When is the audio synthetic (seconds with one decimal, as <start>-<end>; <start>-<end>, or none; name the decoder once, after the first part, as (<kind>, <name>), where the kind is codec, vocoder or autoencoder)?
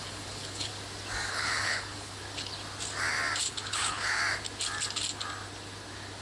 0.0-0.7 (codec, HILCodec); 1.3-2.2; 3.4-4.2